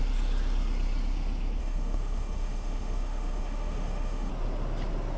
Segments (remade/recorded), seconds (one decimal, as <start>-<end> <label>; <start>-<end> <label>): 0.0-1.6 recorded; 1.6-4.3 remade; 4.3-5.2 recorded